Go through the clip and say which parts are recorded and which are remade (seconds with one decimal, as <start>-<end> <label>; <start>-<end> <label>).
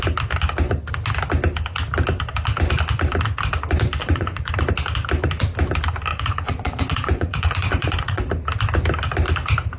0.0-4.0 recorded; 4.0-4.5 remade; 4.5-6.1 recorded; 6.1-8.2 remade; 8.2-9.8 recorded